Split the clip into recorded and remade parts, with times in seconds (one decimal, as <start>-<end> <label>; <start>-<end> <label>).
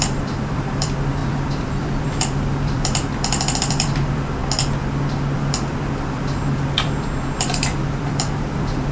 0.0-4.4 remade; 4.4-5.5 recorded; 5.5-8.9 remade